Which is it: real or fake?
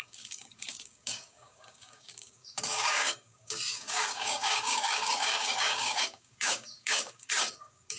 fake